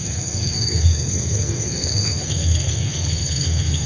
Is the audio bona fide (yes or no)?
no